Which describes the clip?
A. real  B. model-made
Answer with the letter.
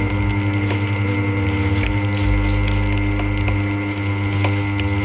A